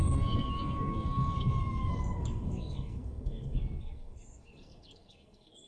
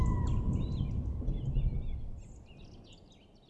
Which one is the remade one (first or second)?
first